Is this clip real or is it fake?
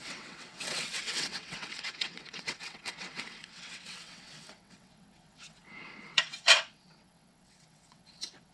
fake